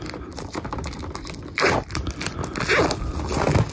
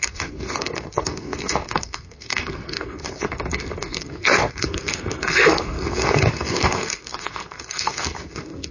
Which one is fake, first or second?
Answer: second